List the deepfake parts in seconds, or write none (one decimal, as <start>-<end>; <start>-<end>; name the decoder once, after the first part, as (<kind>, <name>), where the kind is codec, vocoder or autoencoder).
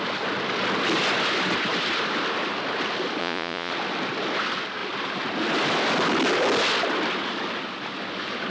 3.2-3.7 (vocoder, Vocos)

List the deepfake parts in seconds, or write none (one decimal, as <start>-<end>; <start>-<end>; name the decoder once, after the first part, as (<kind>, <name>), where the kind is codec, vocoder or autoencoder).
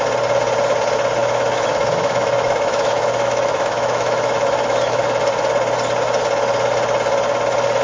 1.2-5.0 (autoencoder, DAC-VAE)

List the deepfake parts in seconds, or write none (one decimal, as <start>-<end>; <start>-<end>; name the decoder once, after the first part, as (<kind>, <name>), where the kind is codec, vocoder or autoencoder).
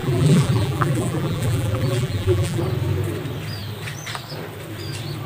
0.0-2.6 (vocoder, BigVGAN v2)